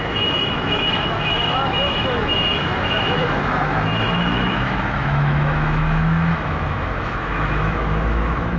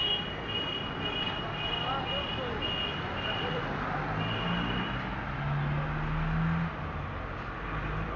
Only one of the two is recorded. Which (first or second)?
second